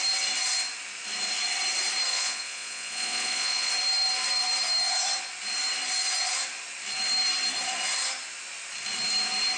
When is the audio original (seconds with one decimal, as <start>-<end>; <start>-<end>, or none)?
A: 0.0-2.1; 3.7-9.6